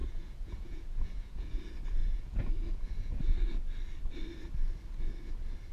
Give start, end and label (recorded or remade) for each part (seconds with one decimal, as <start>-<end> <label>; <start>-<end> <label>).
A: 0.0-1.6 remade; 1.6-2.0 recorded; 2.0-3.2 remade; 3.2-5.7 recorded